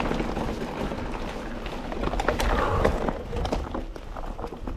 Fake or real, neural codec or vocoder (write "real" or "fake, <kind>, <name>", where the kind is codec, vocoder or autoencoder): real